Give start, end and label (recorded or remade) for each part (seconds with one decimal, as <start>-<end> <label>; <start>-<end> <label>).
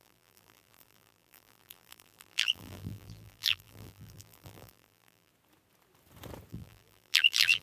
0.0-5.3 remade; 5.3-6.5 recorded; 6.5-7.6 remade